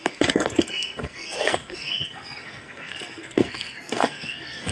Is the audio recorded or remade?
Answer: remade